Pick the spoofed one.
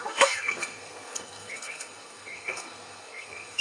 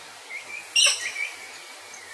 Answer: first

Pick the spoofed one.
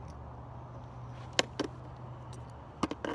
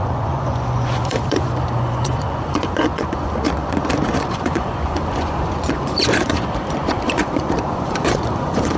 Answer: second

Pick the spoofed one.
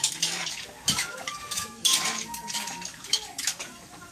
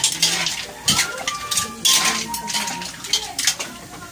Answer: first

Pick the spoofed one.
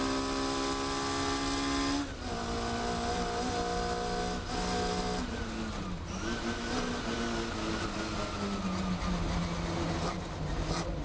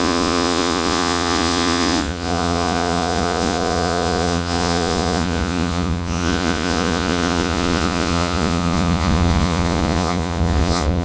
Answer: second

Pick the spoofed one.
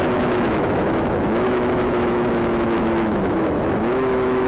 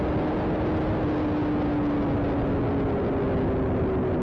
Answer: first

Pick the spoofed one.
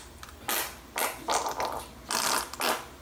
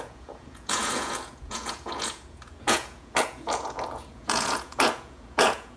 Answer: second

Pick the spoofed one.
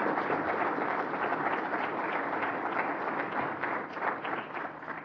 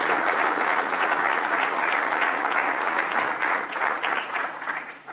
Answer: second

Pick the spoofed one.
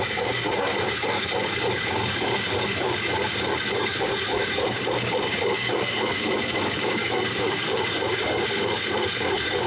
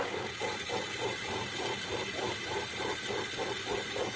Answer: first